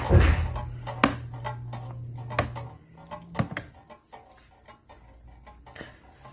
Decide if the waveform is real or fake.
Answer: real